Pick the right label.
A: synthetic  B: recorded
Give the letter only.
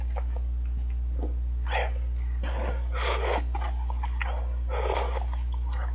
B